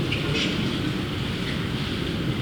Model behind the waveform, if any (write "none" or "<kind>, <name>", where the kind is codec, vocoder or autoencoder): none